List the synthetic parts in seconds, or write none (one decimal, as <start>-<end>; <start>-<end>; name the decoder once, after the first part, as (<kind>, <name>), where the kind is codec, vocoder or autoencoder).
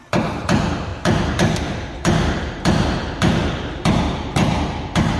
0.0-5.2 (vocoder, BigVGAN v2)